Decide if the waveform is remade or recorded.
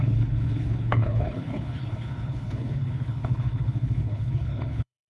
remade